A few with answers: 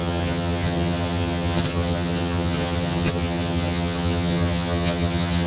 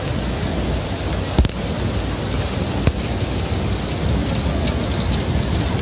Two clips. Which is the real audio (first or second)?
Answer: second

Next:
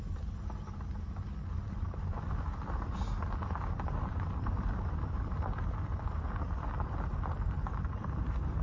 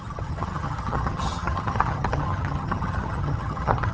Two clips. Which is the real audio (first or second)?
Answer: first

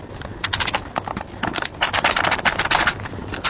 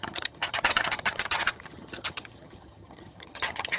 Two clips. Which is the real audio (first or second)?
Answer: first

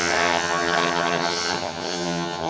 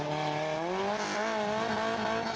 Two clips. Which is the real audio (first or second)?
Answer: second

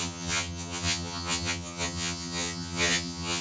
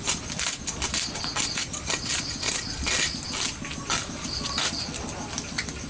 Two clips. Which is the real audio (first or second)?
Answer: second